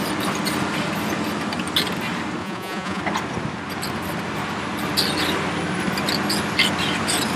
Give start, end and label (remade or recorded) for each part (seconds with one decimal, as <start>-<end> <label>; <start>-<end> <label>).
0.0-2.4 recorded; 2.4-3.0 remade; 3.0-7.4 recorded